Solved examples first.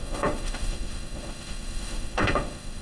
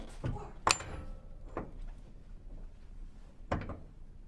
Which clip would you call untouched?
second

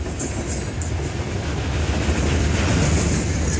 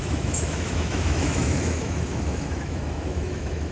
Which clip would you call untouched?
first